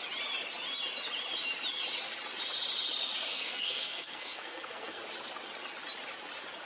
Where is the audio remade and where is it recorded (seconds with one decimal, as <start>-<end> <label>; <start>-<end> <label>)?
0.0-3.3 recorded; 3.3-5.0 remade; 5.0-6.7 recorded